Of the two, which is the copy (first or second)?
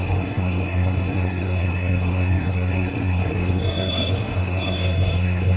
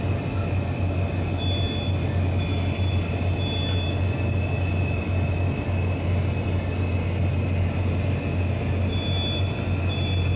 first